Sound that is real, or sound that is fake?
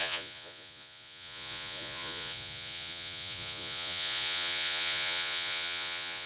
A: fake